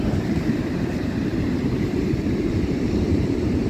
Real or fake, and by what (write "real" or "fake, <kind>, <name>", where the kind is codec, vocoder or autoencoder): fake, vocoder, BigVGAN v2